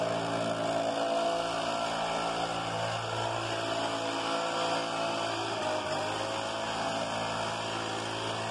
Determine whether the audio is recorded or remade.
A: recorded